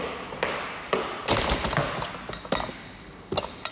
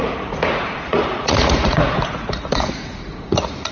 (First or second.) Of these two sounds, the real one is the first